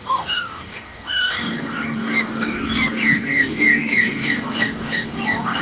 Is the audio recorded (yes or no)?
no